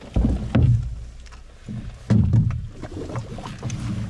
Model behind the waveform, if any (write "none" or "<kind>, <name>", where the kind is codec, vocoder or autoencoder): none